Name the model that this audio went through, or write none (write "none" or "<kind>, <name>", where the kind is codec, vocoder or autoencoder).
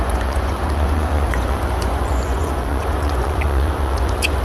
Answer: vocoder, Vocos